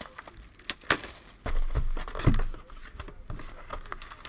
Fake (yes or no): no